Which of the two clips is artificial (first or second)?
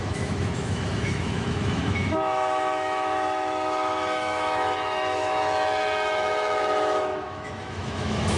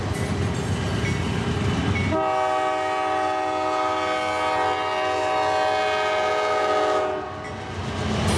first